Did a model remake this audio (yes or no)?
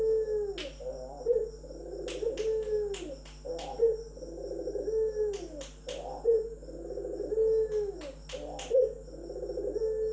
no